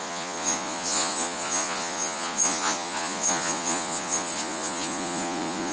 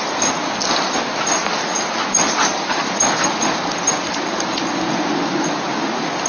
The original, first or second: second